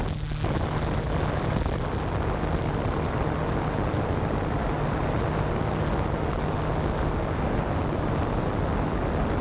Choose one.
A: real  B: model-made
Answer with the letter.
A